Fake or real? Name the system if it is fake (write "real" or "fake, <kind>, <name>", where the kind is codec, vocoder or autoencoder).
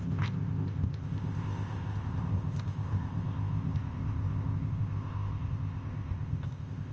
fake, codec, ZipCodec